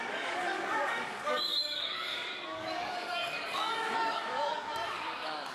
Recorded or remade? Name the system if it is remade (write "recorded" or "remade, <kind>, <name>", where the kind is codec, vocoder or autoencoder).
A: remade, codec, DAC